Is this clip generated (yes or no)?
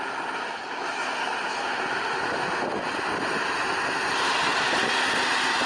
no